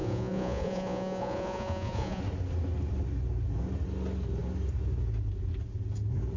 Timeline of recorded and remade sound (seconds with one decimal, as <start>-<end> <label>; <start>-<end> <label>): 0.0-2.2 remade; 2.2-6.4 recorded